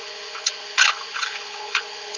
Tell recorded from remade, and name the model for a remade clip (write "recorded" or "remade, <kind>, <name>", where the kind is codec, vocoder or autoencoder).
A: remade, codec, HILCodec